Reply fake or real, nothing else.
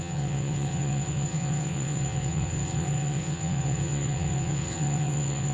fake